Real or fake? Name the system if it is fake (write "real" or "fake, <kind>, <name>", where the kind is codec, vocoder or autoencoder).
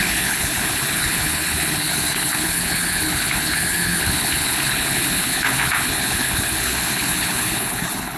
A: fake, codec, HILCodec